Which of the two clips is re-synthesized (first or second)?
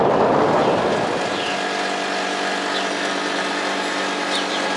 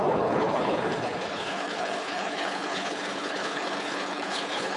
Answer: second